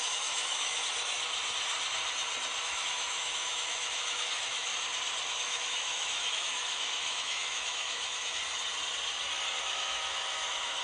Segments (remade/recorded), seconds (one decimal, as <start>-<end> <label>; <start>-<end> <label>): 0.0-0.8 remade; 0.8-2.6 recorded; 2.6-4.7 remade; 4.7-5.3 recorded; 5.3-8.4 remade; 8.4-9.6 recorded; 9.6-10.8 remade